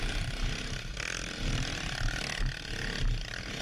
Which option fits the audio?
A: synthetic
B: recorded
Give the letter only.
B